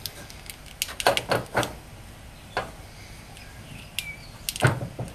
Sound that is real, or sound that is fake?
real